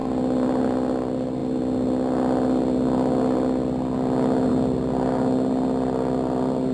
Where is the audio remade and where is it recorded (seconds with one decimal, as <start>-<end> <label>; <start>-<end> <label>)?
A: 0.0-6.7 recorded